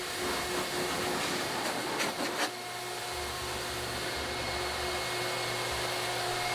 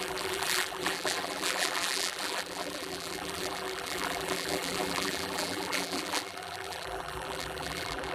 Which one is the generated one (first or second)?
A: second